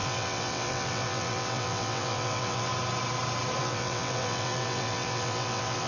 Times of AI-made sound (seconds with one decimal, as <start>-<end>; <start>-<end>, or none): 0.0-2.7; 3.6-5.9